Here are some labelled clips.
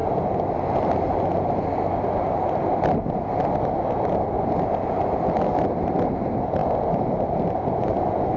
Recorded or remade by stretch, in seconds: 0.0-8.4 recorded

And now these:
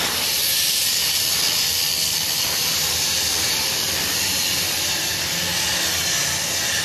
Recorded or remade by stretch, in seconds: 0.0-0.4 recorded; 0.4-4.5 remade; 4.5-6.8 recorded